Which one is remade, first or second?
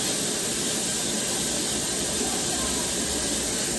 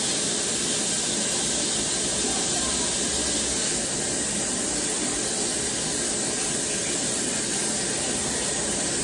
first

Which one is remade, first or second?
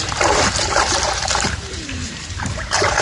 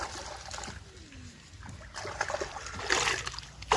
first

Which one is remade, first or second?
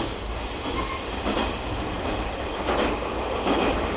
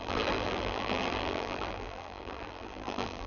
second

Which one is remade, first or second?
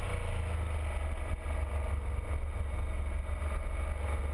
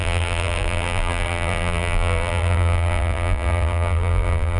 second